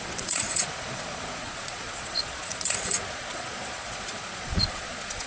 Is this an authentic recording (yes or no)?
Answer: no